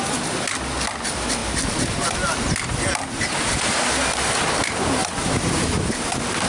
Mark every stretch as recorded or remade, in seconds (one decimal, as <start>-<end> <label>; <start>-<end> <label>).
0.0-5.0 recorded; 5.0-5.9 remade; 5.9-6.5 recorded

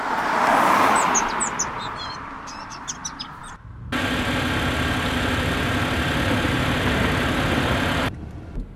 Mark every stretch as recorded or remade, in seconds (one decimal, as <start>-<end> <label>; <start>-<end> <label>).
0.0-8.8 recorded

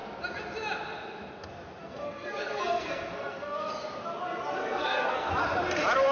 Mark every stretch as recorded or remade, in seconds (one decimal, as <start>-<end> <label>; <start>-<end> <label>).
0.0-1.8 recorded; 1.8-3.7 remade; 3.7-4.6 recorded; 4.6-5.3 remade; 5.3-6.1 recorded

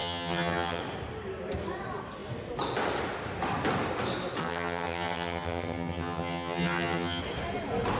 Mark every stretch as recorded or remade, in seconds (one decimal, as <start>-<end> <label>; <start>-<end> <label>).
0.0-0.8 remade; 0.8-4.4 recorded; 4.4-7.2 remade; 7.2-8.0 recorded